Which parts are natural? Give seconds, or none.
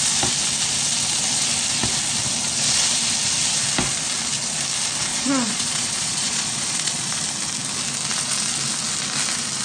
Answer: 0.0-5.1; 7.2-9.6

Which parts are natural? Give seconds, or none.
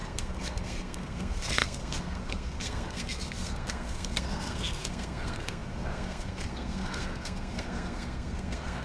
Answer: none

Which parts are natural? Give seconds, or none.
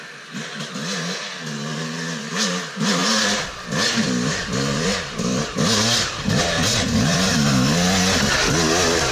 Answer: 0.0-3.0; 7.5-9.1